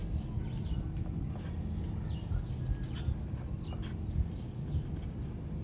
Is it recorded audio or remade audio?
recorded